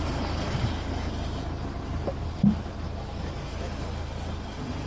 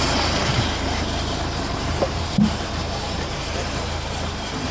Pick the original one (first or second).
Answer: first